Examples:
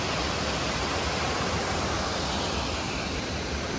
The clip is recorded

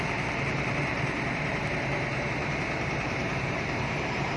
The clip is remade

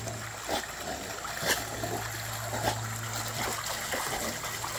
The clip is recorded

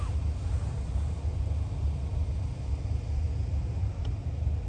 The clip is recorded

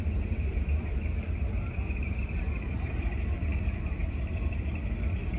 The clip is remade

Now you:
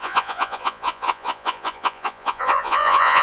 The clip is remade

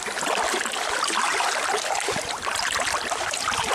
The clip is recorded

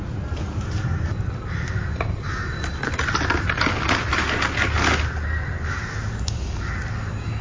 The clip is recorded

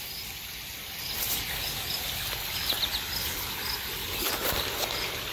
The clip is recorded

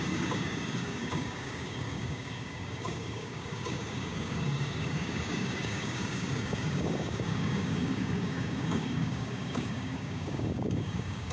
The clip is remade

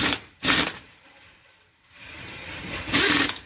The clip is remade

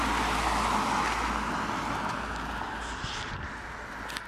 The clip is recorded